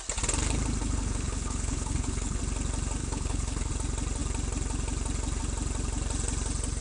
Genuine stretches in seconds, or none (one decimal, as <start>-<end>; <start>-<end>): 0.0-0.8; 2.4-3.0; 3.7-6.8